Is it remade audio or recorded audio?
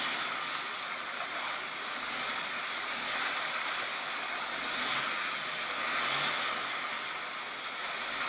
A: recorded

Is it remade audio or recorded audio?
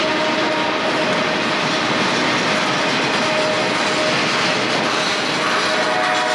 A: recorded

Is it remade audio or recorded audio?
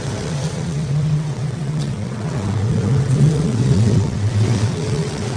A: remade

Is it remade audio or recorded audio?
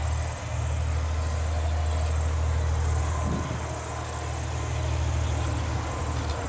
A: recorded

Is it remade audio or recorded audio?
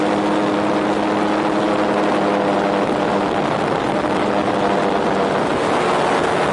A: recorded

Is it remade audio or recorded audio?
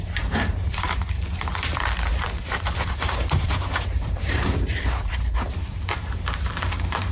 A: remade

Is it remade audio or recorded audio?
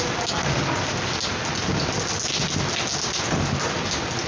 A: recorded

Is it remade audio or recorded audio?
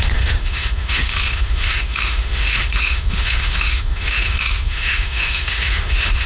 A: remade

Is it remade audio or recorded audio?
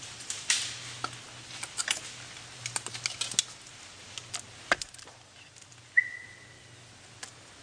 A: recorded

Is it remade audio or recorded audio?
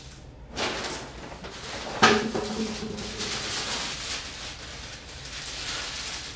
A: recorded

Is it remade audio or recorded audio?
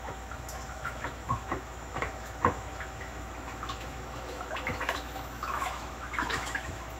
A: remade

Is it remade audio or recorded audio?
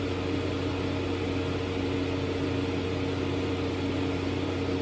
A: recorded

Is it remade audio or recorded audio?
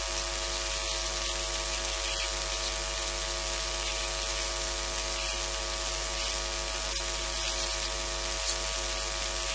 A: recorded